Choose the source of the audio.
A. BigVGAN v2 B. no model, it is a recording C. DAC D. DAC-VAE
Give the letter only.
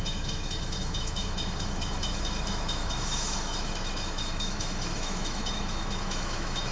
D